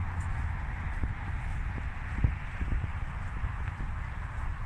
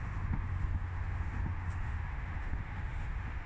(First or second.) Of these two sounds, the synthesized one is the second